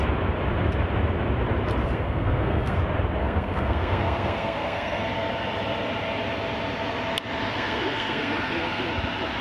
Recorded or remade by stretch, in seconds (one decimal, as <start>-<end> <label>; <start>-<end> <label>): 0.0-1.8 recorded; 1.8-2.8 remade; 2.8-3.2 recorded; 3.2-5.0 remade; 5.0-7.5 recorded; 7.5-8.9 remade; 8.9-9.4 recorded